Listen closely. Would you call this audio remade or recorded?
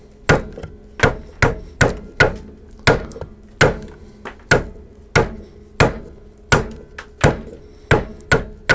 recorded